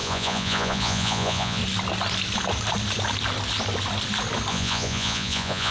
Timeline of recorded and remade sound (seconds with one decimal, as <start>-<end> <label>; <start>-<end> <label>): 0.0-1.6 remade; 1.6-4.5 recorded; 4.5-5.7 remade